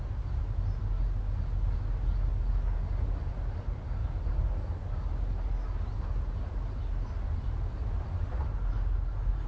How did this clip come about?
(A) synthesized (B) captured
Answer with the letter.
B